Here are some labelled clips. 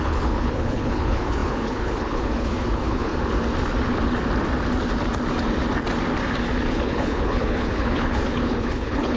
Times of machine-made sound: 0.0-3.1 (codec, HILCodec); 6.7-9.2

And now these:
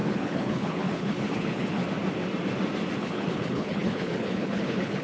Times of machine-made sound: 0.0-1.8 (codec, HILCodec); 3.0-5.0

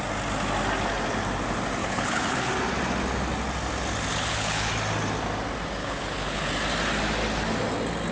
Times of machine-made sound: 1.8-2.5 (codec, HILCodec); 4.1-4.7; 5.8-6.5

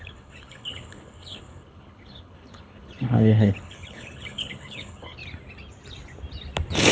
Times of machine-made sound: 0.0-5.2 (codec, HILCodec)

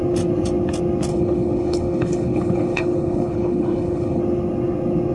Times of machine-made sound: 1.1-4.2 (codec, HILCodec)

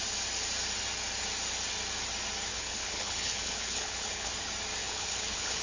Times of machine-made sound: 2.5-4.3 (codec, HILCodec); 4.8-5.6

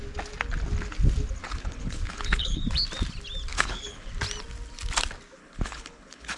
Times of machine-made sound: 1.4-2.6 (codec, HILCodec); 3.5-4.1; 5.4-6.4